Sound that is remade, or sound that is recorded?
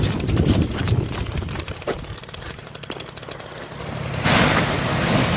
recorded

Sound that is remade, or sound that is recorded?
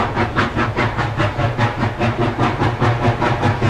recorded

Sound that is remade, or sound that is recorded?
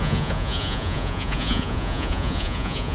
remade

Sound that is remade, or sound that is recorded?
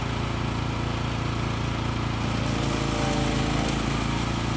recorded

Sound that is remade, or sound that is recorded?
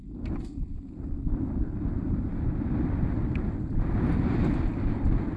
recorded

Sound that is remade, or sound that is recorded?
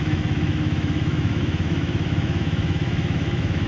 remade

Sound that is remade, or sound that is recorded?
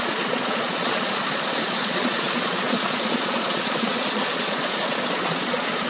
remade